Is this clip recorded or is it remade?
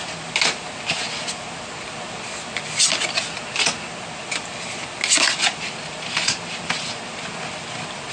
recorded